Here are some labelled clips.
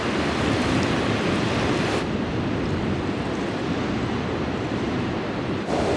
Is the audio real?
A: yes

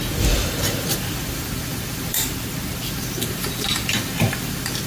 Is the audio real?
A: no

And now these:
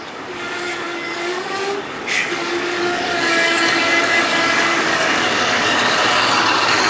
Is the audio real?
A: no